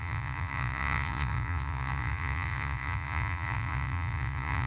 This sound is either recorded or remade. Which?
remade